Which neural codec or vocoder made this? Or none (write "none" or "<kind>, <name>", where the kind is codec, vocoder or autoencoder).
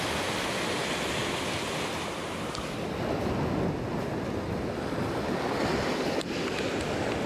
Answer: none